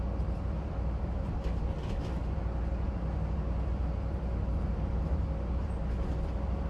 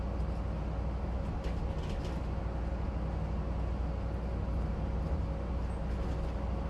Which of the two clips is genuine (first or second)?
second